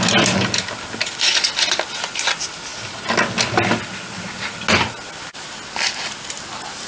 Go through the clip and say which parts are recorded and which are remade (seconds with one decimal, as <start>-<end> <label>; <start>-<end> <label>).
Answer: 0.0-6.9 recorded